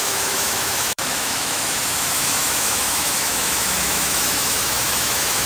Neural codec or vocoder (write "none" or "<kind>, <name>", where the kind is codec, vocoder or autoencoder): autoencoder, DAC-VAE